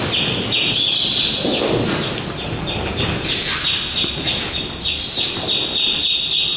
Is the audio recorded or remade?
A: recorded